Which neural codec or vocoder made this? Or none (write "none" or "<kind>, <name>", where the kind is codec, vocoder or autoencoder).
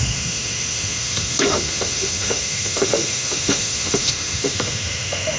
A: autoencoder, DAC-VAE